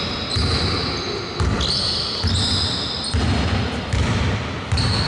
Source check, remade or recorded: recorded